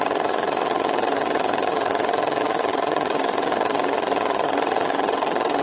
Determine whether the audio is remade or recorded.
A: remade